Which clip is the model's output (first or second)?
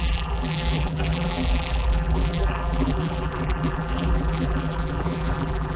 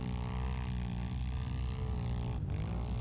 first